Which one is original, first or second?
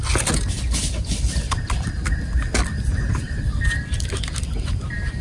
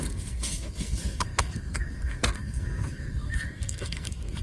first